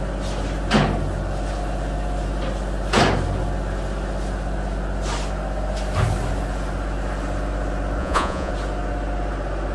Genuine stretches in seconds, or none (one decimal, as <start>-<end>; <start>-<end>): 0.0-8.0; 8.5-9.7